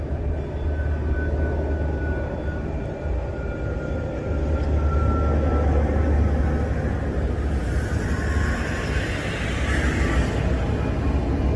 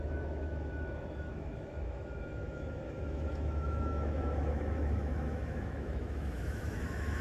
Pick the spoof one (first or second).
second